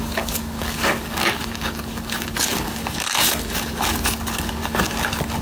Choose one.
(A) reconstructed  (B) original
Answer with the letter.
A